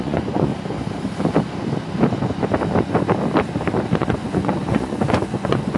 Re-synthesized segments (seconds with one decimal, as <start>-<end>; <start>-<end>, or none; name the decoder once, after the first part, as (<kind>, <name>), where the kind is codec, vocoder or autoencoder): 0.0-0.5 (vocoder, Vocos); 4.0-5.8